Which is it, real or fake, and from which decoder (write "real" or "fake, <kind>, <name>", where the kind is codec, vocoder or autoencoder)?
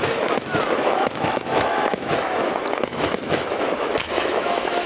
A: fake, autoencoder, DAC-VAE